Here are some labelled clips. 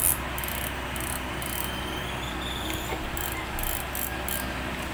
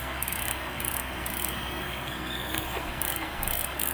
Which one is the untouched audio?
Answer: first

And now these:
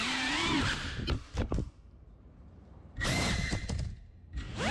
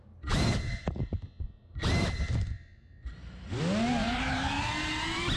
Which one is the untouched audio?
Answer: second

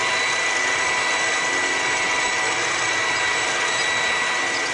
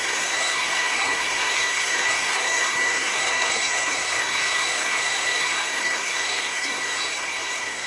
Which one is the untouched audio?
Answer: first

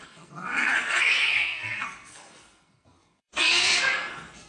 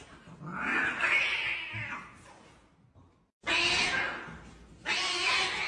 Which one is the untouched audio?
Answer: second